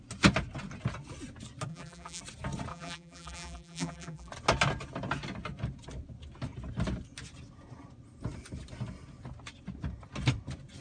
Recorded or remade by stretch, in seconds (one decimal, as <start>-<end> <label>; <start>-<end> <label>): 0.0-1.7 recorded; 1.7-2.2 remade; 2.2-2.7 recorded; 2.7-4.3 remade; 4.3-10.8 recorded